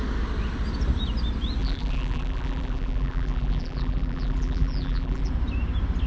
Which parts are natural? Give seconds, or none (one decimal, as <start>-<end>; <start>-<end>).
0.0-1.6; 5.3-6.1